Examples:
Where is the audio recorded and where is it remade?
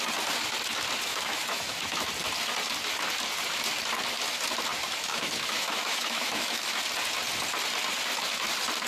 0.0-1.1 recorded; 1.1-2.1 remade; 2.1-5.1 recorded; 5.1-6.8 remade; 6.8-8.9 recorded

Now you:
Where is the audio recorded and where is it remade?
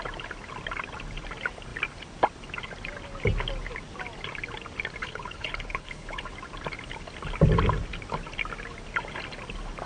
0.0-5.0 recorded; 5.0-6.3 remade; 6.3-9.9 recorded